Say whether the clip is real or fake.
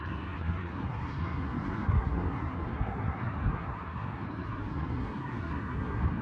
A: fake